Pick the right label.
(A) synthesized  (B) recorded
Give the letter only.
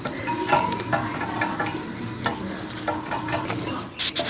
B